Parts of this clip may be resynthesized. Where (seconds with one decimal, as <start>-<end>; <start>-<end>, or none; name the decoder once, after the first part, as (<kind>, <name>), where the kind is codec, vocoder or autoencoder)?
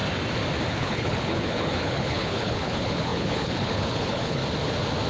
0.7-4.4 (codec, HILCodec)